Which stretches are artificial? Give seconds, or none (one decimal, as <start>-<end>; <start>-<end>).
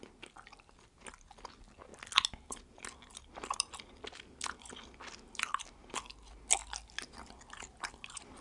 none